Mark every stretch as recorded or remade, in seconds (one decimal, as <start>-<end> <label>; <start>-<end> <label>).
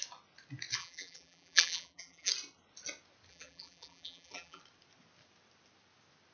0.0-0.8 recorded; 0.8-2.3 remade; 2.3-3.3 recorded; 3.3-4.6 remade; 4.6-6.3 recorded